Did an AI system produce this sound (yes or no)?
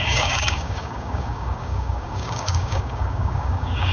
yes